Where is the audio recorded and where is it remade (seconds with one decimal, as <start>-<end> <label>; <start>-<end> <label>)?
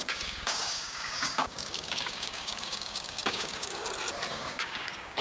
0.0-3.8 remade; 3.8-4.3 recorded; 4.3-5.2 remade